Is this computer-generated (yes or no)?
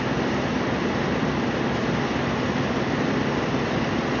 no